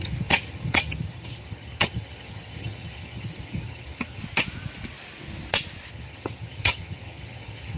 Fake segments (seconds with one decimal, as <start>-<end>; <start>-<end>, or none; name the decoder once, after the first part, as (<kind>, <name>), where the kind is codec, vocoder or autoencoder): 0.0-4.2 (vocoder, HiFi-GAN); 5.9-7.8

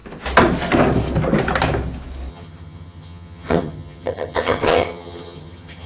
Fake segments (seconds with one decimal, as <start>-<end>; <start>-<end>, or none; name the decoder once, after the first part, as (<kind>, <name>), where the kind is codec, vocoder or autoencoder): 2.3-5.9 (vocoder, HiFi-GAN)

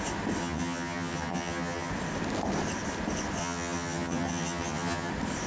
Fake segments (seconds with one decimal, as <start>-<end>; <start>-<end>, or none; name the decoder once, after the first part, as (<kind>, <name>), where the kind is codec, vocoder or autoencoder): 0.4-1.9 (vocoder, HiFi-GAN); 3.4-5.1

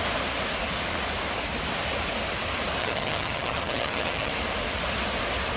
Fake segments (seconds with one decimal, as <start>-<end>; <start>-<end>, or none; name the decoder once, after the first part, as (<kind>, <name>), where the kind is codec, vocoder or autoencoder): 2.8-4.3 (vocoder, HiFi-GAN)

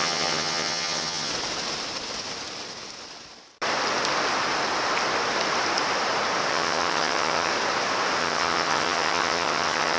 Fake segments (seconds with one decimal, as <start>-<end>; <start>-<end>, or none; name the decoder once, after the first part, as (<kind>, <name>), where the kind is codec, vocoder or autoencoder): 0.0-1.3 (vocoder, HiFi-GAN); 6.5-7.5; 8.2-10.0